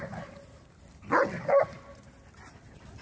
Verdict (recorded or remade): recorded